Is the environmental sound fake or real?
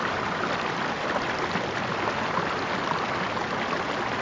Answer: real